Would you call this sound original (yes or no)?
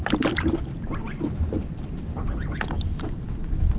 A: no